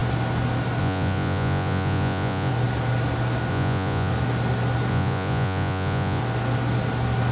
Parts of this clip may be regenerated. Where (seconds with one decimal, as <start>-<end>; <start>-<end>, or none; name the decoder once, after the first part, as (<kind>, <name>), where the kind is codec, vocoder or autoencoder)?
0.8-2.5 (vocoder, Vocos); 3.5-4.1; 4.9-6.2